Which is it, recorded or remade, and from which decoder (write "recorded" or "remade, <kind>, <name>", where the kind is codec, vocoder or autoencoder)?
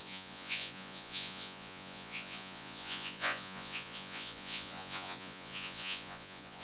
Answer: remade, vocoder, Vocos